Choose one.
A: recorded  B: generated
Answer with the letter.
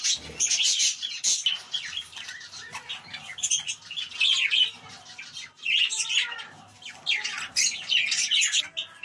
A